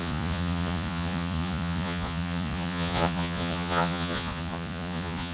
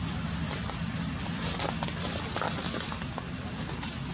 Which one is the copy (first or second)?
first